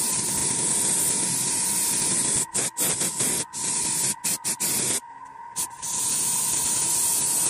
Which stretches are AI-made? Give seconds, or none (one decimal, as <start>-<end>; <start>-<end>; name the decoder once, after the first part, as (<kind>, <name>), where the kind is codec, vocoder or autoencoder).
none